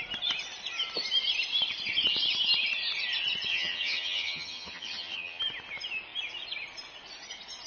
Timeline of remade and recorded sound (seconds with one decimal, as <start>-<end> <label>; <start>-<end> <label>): 0.0-3.5 recorded; 3.5-5.4 remade; 5.4-7.7 recorded